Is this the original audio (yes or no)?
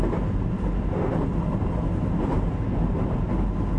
yes